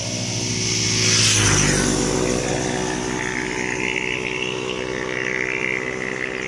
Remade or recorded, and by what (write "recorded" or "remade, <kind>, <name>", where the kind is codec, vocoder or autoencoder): recorded